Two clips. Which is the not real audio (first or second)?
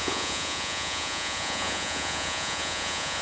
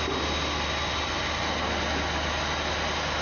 first